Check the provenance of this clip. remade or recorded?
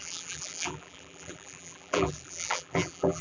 remade